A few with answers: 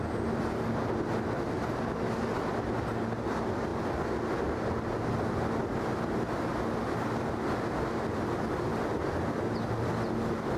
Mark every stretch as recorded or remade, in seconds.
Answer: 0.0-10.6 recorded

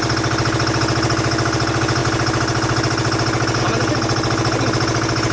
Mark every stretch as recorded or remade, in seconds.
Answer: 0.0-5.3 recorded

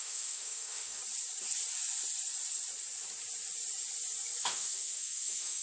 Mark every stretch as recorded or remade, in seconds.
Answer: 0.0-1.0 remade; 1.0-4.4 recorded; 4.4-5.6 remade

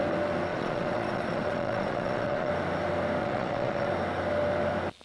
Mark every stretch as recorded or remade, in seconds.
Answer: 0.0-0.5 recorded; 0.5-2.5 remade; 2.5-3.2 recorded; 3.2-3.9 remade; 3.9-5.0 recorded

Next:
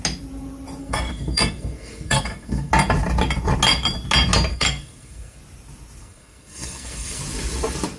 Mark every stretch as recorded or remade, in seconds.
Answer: 0.0-0.8 recorded; 0.8-2.7 remade; 2.7-4.5 recorded; 4.5-5.4 remade; 5.4-6.0 recorded; 6.0-7.2 remade; 7.2-8.0 recorded

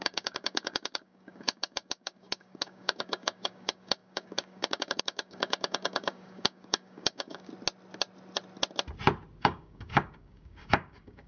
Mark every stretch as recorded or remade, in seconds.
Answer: 0.0-7.5 remade; 7.5-9.4 recorded; 9.4-11.3 remade

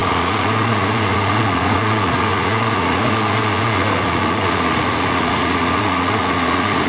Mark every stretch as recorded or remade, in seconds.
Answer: 0.0-6.9 remade

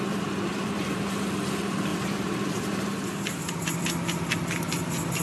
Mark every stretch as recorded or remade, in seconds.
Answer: 0.0-0.5 recorded; 0.5-1.1 remade; 1.1-1.9 recorded; 1.9-3.5 remade; 3.5-5.2 recorded